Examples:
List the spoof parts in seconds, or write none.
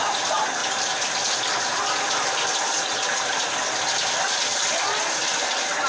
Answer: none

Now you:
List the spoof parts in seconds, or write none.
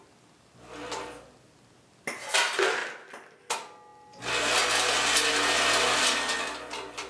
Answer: none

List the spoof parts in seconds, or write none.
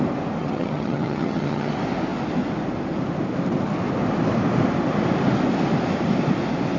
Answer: 0.4-1.7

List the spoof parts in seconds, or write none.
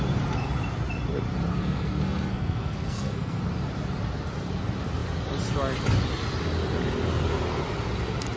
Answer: 1.5-3.4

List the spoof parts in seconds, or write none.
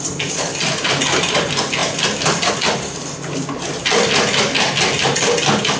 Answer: none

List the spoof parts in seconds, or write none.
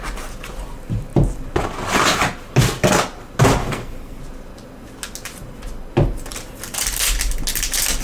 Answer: 3.6-4.2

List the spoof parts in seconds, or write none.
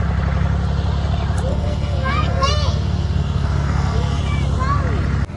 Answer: 1.5-4.2